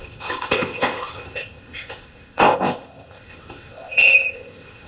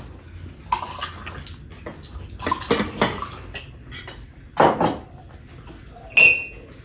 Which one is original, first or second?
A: second